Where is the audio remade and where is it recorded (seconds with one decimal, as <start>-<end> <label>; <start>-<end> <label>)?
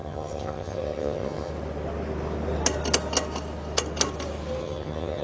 0.0-1.5 remade; 1.5-4.6 recorded; 4.6-5.2 remade